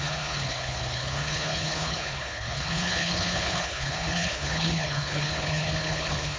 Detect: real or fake fake